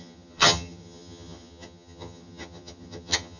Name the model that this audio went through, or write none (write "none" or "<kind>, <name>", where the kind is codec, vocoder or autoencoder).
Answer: vocoder, HiFi-GAN